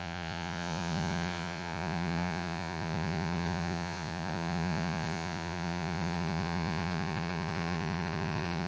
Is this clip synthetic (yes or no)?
yes